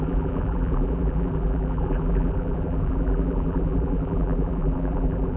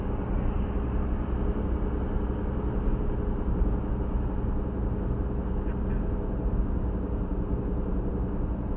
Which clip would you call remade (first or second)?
first